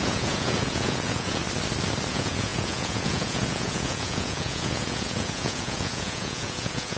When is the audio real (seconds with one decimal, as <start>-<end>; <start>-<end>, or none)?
1.4-2.1